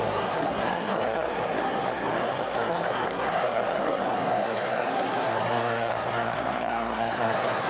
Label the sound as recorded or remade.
remade